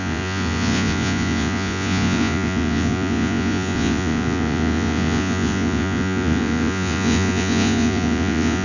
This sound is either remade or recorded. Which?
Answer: remade